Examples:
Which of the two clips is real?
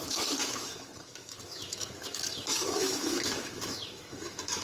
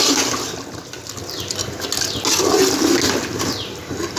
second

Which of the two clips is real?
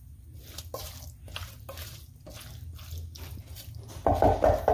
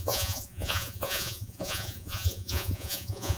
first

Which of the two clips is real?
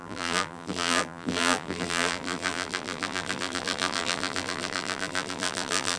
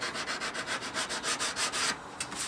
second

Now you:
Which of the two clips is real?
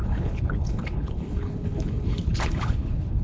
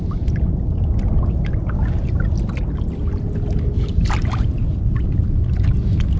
second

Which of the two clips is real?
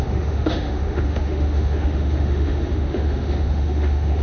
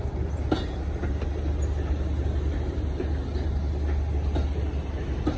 second